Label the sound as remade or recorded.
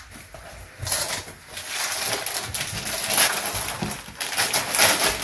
recorded